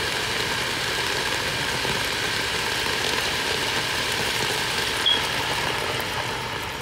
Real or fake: fake